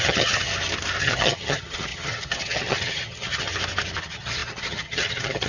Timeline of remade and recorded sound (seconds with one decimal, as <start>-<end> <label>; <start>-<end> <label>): 0.0-0.5 remade; 0.5-1.0 recorded; 1.0-3.5 remade; 3.5-4.0 recorded; 4.0-5.5 remade